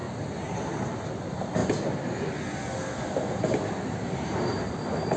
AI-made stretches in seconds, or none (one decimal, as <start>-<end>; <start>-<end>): 0.8-1.6; 3.7-5.2